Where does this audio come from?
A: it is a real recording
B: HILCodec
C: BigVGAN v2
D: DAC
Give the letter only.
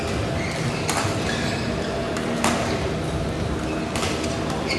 A